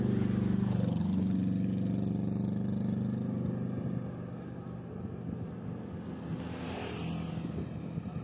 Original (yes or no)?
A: yes